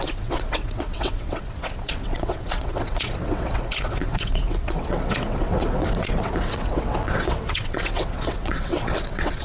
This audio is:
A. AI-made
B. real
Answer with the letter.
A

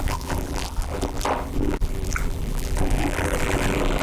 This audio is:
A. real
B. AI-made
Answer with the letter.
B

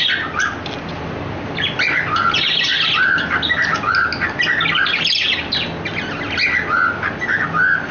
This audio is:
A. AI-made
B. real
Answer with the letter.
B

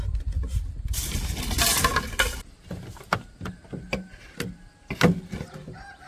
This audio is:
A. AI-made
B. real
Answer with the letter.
B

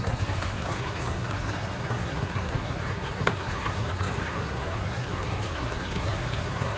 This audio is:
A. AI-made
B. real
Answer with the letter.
A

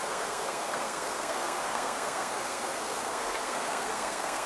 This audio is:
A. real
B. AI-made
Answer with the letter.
B